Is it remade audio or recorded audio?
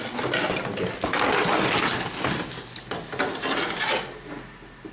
recorded